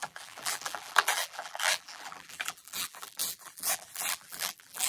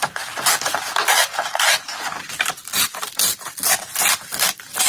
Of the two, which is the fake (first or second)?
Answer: first